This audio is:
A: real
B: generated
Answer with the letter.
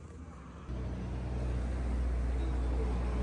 A